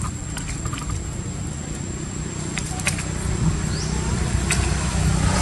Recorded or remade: recorded